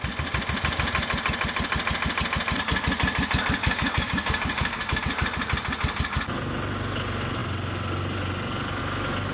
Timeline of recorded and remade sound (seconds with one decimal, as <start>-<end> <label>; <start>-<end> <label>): 0.0-3.6 recorded; 3.6-5.0 remade; 5.0-9.3 recorded